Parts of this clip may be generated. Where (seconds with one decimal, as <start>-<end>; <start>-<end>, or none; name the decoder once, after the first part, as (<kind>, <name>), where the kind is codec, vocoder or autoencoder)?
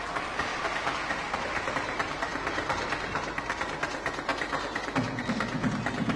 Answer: none